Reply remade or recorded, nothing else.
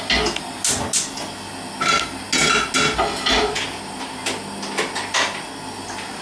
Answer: recorded